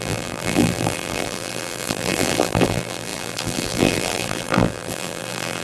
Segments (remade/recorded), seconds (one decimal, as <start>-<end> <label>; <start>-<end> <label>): 0.0-5.6 remade